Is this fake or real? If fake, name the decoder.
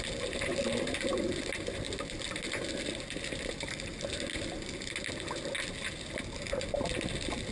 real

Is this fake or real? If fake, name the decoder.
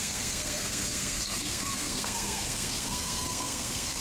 fake, codec, SNAC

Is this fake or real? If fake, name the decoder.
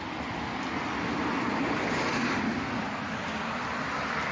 real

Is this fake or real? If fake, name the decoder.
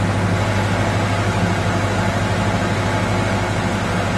real